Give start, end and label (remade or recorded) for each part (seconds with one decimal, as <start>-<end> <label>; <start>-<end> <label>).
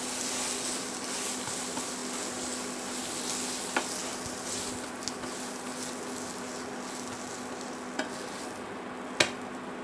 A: 0.0-4.0 recorded; 4.0-5.0 remade; 5.0-9.8 recorded